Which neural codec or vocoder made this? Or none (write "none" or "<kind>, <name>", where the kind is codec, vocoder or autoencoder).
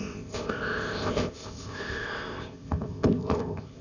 codec, ZipCodec